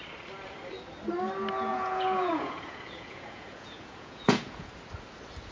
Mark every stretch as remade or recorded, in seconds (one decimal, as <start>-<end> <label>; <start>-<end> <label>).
0.0-1.7 recorded; 1.7-4.7 remade; 4.7-5.5 recorded